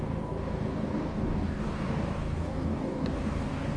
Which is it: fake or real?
fake